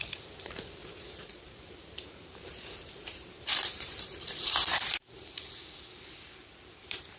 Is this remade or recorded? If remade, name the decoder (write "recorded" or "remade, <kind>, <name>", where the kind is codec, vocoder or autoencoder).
remade, vocoder, BigVGAN v2